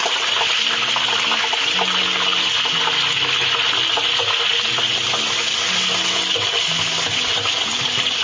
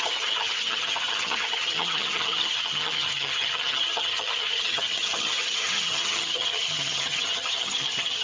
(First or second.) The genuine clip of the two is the first